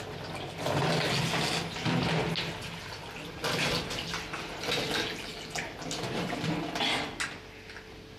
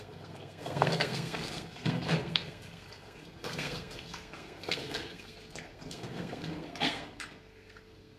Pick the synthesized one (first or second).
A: second